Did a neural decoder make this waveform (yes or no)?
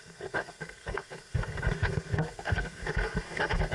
yes